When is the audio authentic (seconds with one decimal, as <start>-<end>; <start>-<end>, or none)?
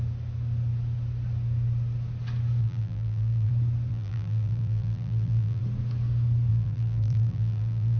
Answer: 0.0-2.6; 3.5-3.9; 5.6-6.5